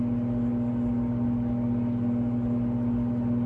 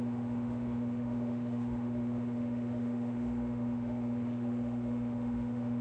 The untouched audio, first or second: first